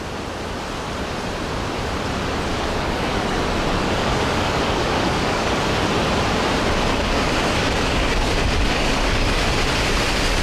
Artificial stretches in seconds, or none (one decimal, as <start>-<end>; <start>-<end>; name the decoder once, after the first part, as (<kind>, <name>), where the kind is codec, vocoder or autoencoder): 2.5-3.4 (codec, DAC); 3.8-5.9; 6.9-9.5